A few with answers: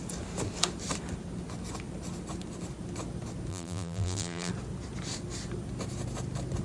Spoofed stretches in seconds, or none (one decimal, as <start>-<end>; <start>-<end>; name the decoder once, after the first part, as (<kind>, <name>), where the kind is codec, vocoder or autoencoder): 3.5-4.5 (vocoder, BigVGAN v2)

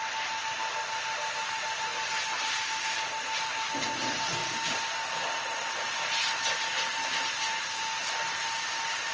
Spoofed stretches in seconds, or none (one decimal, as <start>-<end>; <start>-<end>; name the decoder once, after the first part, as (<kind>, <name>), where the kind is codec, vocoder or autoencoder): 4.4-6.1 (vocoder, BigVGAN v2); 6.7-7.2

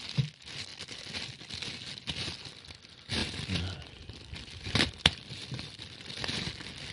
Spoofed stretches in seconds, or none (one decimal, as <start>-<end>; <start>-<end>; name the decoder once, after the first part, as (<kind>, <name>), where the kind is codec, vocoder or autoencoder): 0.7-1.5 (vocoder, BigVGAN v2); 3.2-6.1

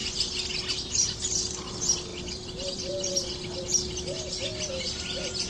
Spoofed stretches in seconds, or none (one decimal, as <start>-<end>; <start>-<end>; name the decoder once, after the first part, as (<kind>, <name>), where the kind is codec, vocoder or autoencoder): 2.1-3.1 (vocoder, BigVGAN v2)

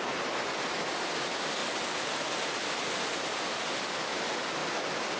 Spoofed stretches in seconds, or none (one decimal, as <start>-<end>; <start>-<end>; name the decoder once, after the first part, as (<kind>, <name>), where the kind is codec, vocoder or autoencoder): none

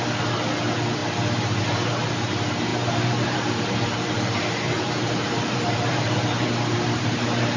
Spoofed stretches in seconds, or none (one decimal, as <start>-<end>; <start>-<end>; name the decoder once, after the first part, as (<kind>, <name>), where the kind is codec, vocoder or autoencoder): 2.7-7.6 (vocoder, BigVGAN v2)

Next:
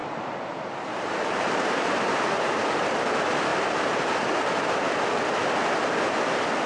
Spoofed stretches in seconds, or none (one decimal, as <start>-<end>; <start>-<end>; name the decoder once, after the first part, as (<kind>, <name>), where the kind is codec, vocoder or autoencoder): 0.0-0.5 (vocoder, BigVGAN v2); 0.9-2.4; 3.5-4.7

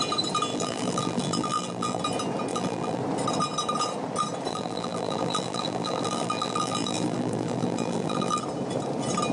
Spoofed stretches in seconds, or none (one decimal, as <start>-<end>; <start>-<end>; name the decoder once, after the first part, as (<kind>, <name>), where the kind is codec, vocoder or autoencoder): 0.5-2.0 (vocoder, BigVGAN v2); 2.5-3.0; 4.5-8.4